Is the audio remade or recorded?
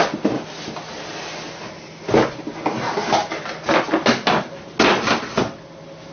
recorded